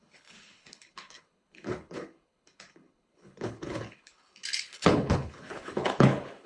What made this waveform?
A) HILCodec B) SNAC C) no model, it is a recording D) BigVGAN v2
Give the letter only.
A